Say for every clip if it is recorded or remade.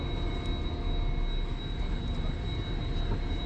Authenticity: recorded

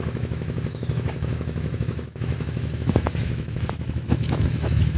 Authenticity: remade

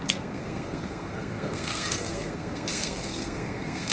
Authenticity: remade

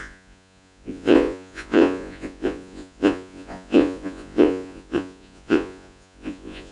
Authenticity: remade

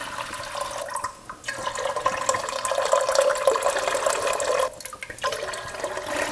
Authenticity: recorded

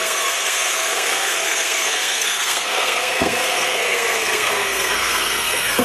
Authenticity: remade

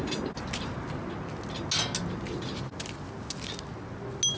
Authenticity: recorded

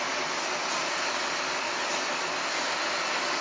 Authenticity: recorded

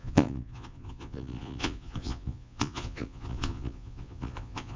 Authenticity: remade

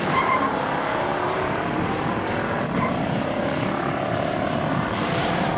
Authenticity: remade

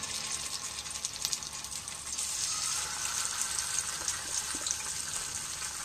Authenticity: recorded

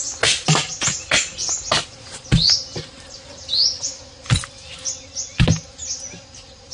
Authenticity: recorded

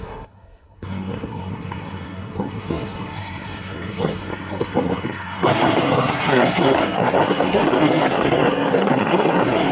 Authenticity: remade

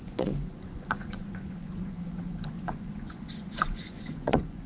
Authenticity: remade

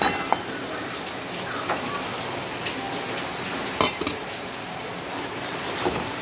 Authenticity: recorded